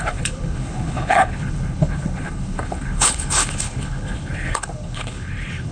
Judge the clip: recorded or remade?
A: remade